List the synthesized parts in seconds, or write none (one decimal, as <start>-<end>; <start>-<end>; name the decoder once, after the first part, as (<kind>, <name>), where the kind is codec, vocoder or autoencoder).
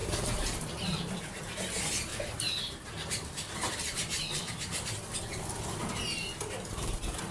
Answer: 0.0-1.2 (vocoder, BigVGAN v2); 2.1-5.0